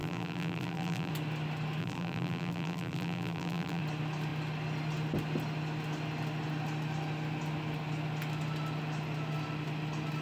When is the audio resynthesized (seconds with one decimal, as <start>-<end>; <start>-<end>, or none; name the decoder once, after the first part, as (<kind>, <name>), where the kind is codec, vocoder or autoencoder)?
0.0-1.1 (vocoder, BigVGAN v2); 1.8-3.8